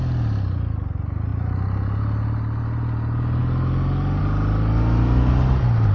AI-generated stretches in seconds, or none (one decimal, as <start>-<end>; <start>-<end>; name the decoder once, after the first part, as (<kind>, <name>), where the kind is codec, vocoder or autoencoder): none